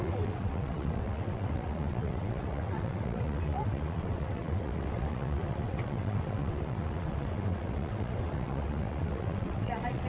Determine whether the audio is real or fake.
fake